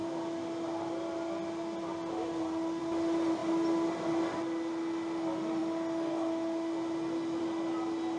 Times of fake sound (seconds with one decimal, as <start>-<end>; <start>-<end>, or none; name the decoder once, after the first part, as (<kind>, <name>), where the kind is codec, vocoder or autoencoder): none